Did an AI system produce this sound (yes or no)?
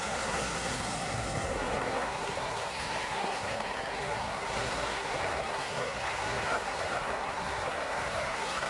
yes